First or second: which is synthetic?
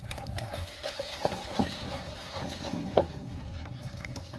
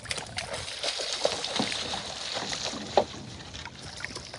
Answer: first